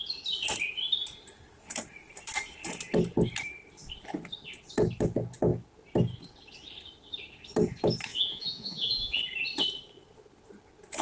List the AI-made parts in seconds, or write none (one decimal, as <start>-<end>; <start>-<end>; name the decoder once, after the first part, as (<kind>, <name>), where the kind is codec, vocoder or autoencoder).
8.1-9.2 (vocoder, Vocos)